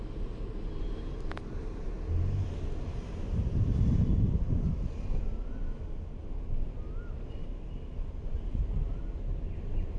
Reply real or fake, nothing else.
real